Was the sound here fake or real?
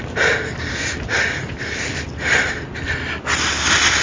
real